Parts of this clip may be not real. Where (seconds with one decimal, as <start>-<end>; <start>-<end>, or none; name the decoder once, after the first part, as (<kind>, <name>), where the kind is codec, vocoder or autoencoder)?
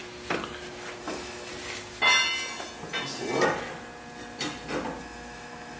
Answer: 1.0-1.5 (autoencoder, DAC-VAE); 5.0-5.8